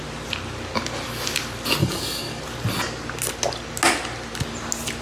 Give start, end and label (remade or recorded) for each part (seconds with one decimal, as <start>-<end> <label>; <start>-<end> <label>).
0.0-1.8 recorded; 1.8-2.4 remade; 2.4-5.0 recorded